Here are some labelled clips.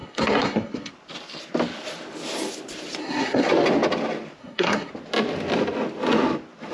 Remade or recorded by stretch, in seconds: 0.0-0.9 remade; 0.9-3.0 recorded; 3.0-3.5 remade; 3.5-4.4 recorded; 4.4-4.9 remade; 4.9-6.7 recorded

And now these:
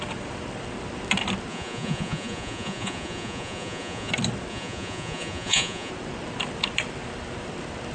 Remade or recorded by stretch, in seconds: 0.0-1.5 recorded; 1.5-4.1 remade; 4.1-4.5 recorded; 4.5-5.9 remade; 5.9-7.9 recorded

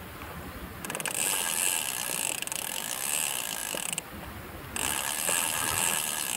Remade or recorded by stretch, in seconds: 0.0-6.4 recorded

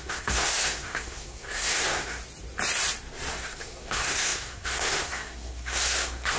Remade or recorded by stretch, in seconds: 0.0-2.2 remade; 2.2-3.3 recorded; 3.3-6.4 remade

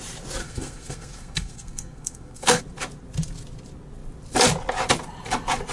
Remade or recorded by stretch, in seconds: 0.0-0.4 recorded; 0.4-2.6 remade; 2.6-5.7 recorded